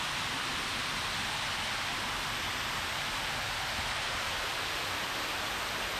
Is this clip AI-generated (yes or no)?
yes